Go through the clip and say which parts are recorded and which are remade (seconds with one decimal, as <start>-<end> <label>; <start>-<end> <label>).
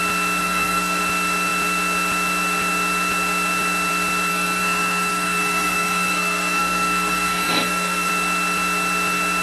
0.0-0.4 recorded; 0.4-1.0 remade; 1.0-4.3 recorded; 4.3-8.1 remade; 8.1-9.4 recorded